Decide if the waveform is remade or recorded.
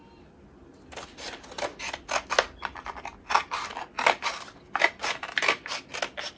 recorded